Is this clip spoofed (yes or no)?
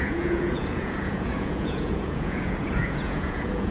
yes